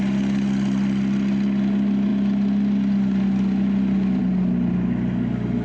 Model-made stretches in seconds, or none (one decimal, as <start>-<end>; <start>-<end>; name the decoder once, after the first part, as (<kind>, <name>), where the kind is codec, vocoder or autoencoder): none